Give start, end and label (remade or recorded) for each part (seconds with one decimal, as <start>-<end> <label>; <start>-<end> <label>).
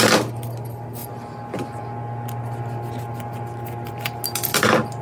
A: 0.0-5.0 recorded